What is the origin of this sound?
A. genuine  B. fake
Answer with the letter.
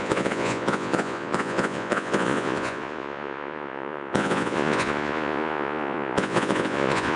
B